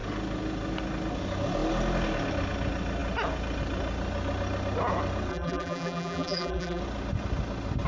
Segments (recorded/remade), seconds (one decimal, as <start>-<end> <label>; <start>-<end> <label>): 0.0-5.3 recorded; 5.3-6.8 remade; 6.8-7.9 recorded